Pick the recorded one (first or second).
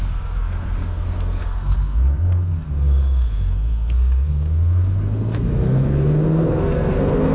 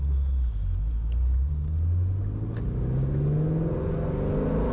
second